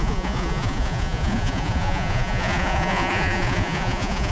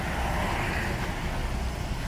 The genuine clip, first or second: second